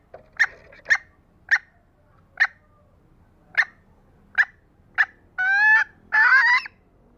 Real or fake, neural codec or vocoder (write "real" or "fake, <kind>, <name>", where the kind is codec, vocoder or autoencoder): real